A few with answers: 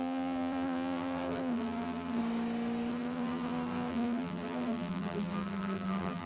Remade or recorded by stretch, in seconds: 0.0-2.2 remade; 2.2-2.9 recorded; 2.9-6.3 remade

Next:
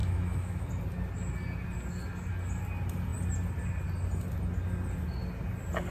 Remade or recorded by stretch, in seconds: 0.0-0.7 remade; 0.7-5.9 recorded

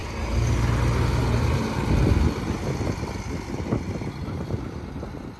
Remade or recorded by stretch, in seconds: 0.0-5.4 recorded

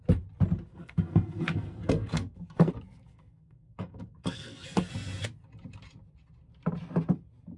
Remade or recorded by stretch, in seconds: 0.0-0.7 recorded; 0.7-2.7 remade; 2.7-3.1 recorded; 3.1-4.9 remade; 4.9-7.6 recorded

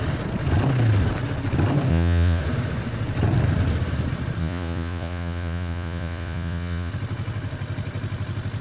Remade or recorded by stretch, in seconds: 0.0-1.9 recorded; 1.9-2.4 remade; 2.4-4.4 recorded; 4.4-6.9 remade; 6.9-8.6 recorded

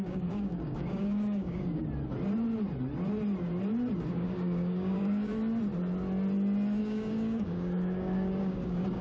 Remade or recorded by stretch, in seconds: 0.0-1.8 remade; 1.8-4.1 recorded; 4.1-5.3 remade; 5.3-6.8 recorded; 6.8-9.0 remade

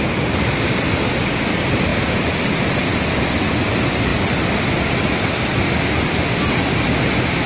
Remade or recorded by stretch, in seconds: 0.0-1.9 recorded; 1.9-2.5 remade; 2.5-7.5 recorded